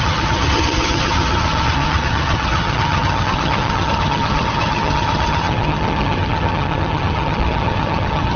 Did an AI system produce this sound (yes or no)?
yes